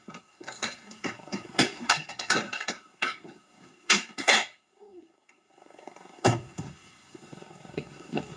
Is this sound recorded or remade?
remade